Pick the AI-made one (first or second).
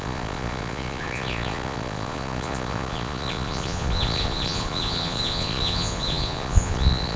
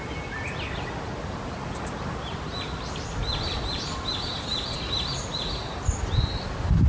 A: first